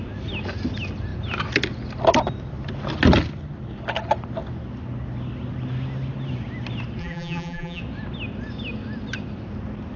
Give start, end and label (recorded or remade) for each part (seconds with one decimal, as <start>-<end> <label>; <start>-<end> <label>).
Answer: 0.0-7.0 recorded; 7.0-7.8 remade; 7.8-10.0 recorded

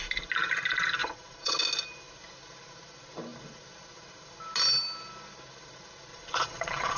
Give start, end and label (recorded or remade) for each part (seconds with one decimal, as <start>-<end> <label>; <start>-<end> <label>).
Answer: 0.0-1.0 recorded; 1.0-1.6 remade; 1.6-6.1 recorded; 6.1-7.0 remade

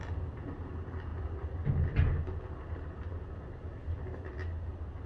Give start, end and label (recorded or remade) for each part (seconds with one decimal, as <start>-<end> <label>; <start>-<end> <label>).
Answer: 0.0-5.1 recorded

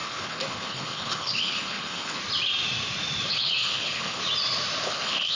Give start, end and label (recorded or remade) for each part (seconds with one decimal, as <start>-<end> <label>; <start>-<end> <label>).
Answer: 0.0-2.2 remade; 2.2-3.3 recorded; 3.3-4.2 remade; 4.2-4.8 recorded; 4.8-5.3 remade

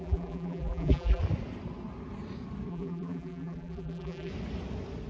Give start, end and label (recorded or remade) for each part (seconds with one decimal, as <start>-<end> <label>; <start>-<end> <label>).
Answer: 0.0-1.2 remade; 1.2-2.7 recorded; 2.7-4.3 remade; 4.3-5.1 recorded

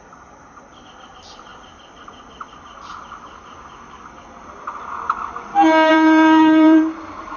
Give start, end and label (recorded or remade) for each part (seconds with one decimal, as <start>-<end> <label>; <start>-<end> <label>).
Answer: 0.0-1.5 remade; 1.5-5.9 recorded; 5.9-7.4 remade